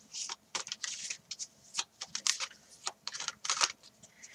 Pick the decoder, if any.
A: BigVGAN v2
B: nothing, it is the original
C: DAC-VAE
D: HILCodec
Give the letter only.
A